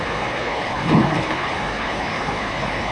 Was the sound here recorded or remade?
remade